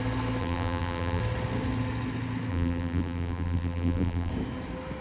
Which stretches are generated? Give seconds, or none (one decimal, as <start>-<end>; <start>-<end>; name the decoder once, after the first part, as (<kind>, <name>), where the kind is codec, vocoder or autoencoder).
0.4-1.2 (vocoder, BigVGAN v2); 2.5-4.3